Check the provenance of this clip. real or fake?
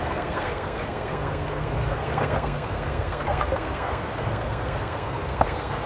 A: fake